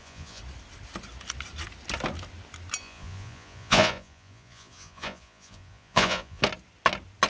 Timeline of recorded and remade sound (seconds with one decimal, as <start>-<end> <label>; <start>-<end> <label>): 0.0-0.4 remade; 0.4-2.8 recorded; 2.8-6.4 remade; 6.4-7.3 recorded